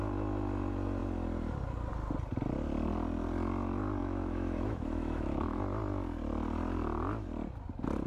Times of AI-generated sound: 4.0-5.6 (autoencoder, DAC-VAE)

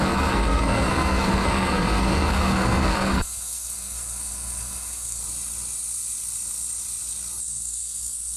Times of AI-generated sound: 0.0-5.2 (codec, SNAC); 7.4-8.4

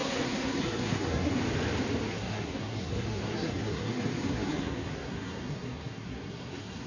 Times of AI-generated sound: 0.0-1.4 (codec, SNAC); 2.1-6.9

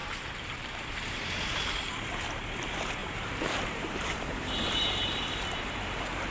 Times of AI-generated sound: 0.0-1.9 (vocoder, BigVGAN v2); 3.0-5.7

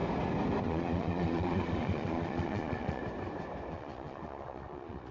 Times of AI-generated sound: 0.6-3.0 (vocoder, Vocos); 3.7-5.1

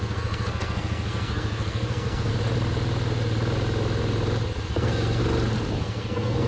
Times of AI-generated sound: 0.0-2.3 (codec, SNAC); 4.7-5.2; 5.8-6.5

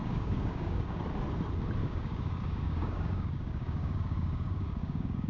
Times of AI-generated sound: 0.0-1.0 (codec, DAC); 1.8-5.3

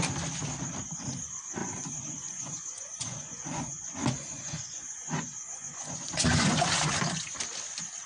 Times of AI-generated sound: 1.6-6.5 (vocoder, Vocos)